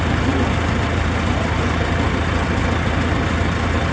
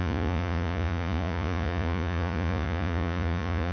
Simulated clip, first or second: second